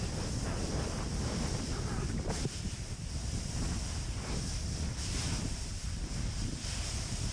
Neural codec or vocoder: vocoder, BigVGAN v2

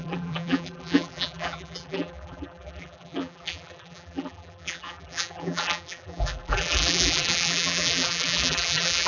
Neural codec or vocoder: vocoder, BigVGAN v2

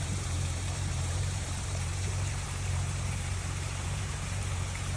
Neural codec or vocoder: vocoder, BigVGAN v2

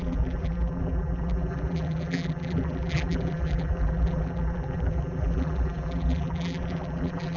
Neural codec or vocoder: vocoder, BigVGAN v2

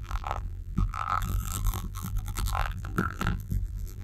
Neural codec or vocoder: vocoder, BigVGAN v2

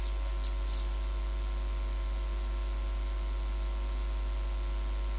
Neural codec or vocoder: none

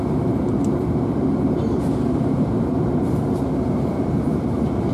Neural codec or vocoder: vocoder, BigVGAN v2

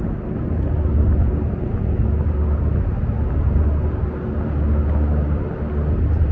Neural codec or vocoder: none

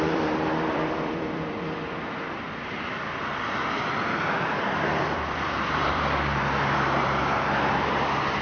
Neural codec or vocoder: vocoder, BigVGAN v2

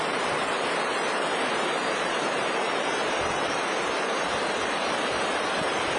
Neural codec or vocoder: vocoder, BigVGAN v2